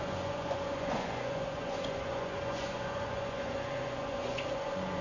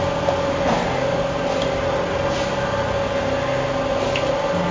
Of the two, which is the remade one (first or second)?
first